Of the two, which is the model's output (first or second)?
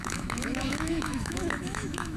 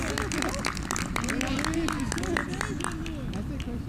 first